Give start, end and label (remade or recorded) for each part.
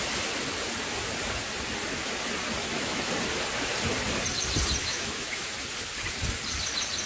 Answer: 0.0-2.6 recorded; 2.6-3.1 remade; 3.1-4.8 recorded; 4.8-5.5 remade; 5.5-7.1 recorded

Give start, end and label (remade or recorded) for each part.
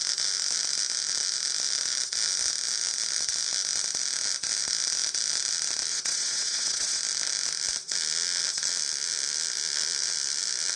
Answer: 0.0-5.9 recorded; 5.9-7.0 remade; 7.0-10.8 recorded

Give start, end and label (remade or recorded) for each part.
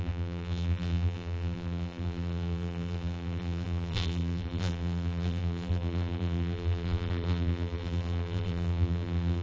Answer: 0.0-9.4 remade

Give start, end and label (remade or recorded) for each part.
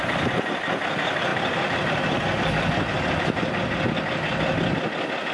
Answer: 0.0-1.3 recorded; 1.3-3.0 remade; 3.0-5.3 recorded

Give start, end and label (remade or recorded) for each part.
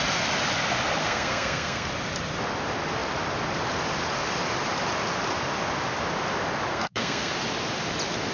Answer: 0.0-1.0 recorded; 1.0-1.9 remade; 1.9-6.7 recorded; 6.7-7.3 remade; 7.3-8.3 recorded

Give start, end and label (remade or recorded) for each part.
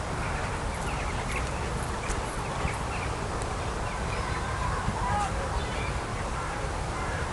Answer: 0.0-6.1 recorded; 6.1-7.3 remade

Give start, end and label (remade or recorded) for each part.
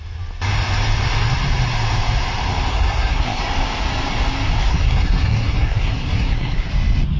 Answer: 0.0-2.7 recorded; 2.7-3.4 remade; 3.4-4.6 recorded; 4.6-6.7 remade; 6.7-7.2 recorded